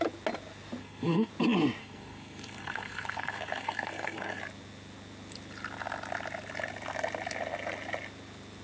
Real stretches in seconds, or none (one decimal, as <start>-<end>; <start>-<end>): 0.0-0.8; 1.3-1.8; 4.4-8.6